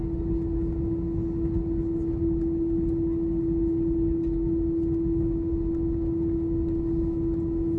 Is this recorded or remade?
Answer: recorded